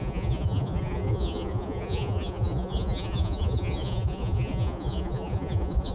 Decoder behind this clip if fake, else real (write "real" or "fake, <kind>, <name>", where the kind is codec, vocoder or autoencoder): fake, vocoder, Vocos